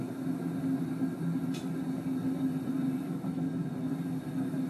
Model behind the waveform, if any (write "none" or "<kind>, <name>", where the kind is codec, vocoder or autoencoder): none